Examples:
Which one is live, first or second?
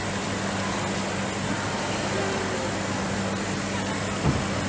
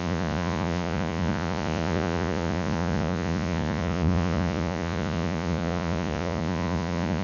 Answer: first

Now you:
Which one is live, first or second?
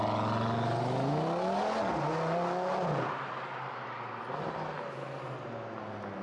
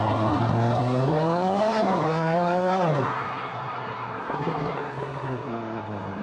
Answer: first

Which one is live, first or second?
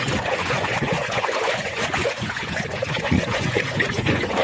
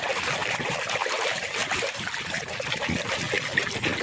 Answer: second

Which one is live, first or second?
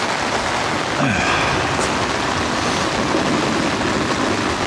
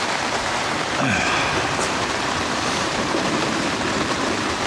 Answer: first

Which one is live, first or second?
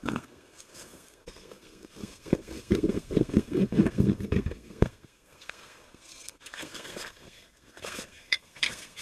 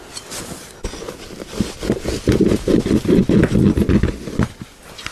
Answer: second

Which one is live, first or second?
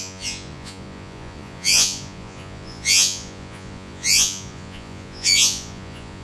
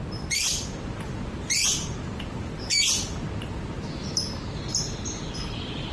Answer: second